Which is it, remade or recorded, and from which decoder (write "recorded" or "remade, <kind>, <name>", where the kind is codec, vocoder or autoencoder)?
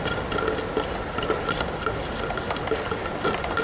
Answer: recorded